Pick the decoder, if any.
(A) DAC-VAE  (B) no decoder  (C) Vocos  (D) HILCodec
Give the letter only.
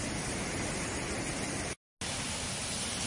B